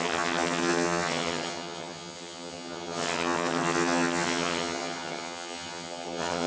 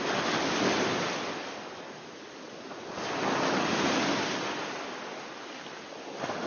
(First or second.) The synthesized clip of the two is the first